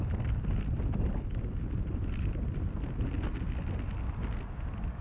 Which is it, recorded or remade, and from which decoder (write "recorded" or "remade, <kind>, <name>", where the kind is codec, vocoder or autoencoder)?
recorded